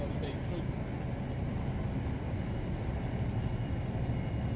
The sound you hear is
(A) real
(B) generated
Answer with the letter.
A